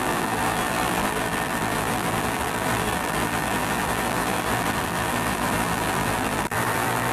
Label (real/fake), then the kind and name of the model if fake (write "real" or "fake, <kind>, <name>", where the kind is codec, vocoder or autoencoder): fake, vocoder, BigVGAN v2